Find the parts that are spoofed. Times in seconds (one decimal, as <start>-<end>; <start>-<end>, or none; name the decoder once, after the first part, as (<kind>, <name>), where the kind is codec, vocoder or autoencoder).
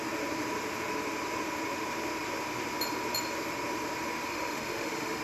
4.3-5.2 (autoencoder, DAC-VAE)